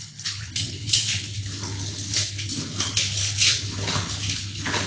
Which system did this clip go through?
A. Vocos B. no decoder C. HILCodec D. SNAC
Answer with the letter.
C